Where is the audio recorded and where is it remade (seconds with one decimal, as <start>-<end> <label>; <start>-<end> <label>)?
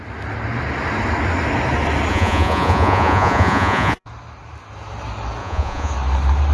0.0-2.1 recorded; 2.1-4.1 remade; 4.1-5.4 recorded; 5.4-5.9 remade; 5.9-6.5 recorded